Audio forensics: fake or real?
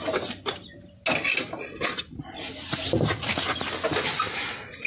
real